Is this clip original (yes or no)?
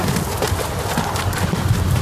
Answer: yes